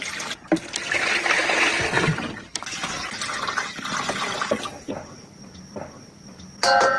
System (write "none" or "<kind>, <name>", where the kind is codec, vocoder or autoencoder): none